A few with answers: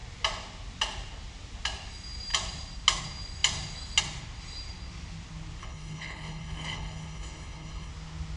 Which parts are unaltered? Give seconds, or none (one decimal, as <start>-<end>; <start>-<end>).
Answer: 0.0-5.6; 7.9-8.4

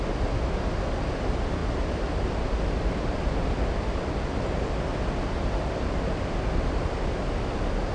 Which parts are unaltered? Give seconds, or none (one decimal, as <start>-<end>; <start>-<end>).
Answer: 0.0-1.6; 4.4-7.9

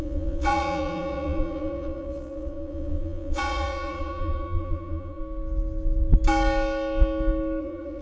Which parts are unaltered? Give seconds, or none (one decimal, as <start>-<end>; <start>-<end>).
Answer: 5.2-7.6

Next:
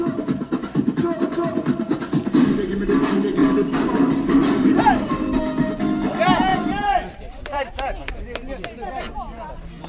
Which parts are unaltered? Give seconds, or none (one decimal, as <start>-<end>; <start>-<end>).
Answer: 0.0-3.4; 4.8-6.5; 8.1-9.9